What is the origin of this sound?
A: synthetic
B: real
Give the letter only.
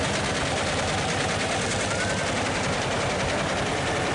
B